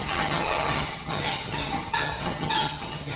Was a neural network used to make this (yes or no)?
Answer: yes